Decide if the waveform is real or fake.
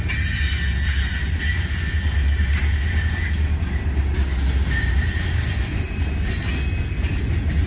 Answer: real